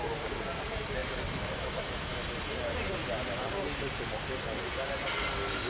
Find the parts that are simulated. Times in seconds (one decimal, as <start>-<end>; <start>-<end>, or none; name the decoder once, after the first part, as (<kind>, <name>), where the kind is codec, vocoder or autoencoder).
none